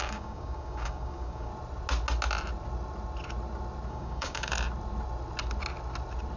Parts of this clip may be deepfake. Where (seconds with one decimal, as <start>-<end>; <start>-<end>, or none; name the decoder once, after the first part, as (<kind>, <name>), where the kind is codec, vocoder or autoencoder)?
0.0-1.5 (codec, DAC); 3.9-4.5